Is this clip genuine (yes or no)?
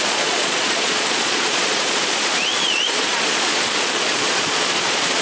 no